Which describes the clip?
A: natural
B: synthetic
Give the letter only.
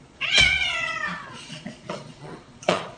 B